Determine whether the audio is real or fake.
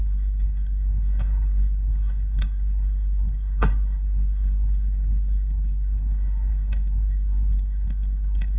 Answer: fake